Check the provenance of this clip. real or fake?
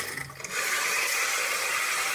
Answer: real